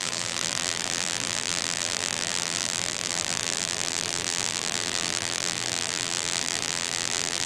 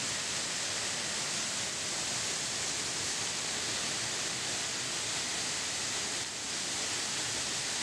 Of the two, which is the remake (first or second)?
first